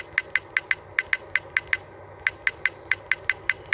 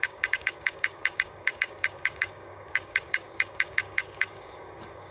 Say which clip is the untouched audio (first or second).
first